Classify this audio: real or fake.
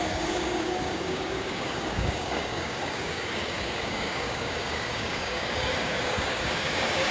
fake